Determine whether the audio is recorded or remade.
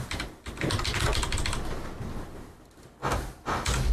recorded